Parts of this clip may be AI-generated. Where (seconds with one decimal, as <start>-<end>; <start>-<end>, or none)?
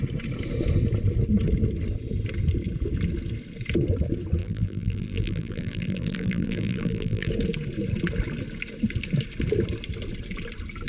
4.4-7.3